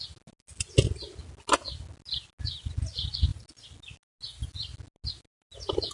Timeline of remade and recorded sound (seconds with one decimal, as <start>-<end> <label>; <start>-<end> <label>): 0.0-5.9 recorded